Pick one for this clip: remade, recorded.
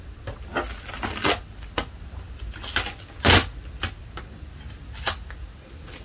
recorded